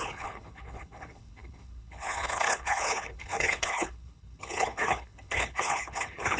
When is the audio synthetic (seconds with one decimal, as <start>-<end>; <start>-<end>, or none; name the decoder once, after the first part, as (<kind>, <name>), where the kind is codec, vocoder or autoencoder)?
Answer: 0.0-6.4 (codec, HILCodec)